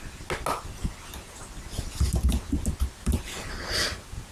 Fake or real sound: real